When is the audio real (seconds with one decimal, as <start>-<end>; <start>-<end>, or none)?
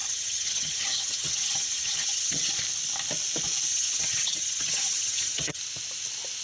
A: 2.5-3.7; 5.6-6.4